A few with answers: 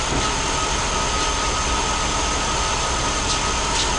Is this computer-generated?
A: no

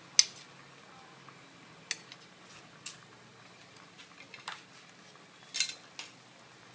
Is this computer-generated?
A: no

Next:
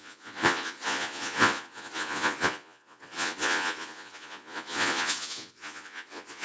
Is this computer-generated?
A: yes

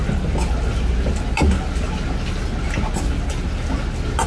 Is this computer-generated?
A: no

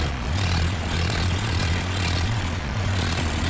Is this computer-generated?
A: yes